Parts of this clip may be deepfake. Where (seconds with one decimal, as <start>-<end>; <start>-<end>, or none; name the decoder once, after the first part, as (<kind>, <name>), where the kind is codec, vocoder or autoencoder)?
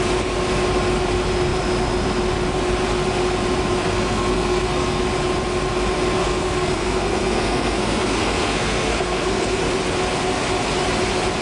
3.8-5.0 (codec, SNAC); 6.2-9.6